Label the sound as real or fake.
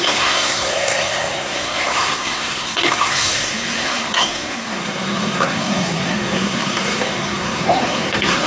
fake